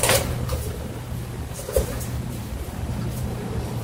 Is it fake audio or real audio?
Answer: fake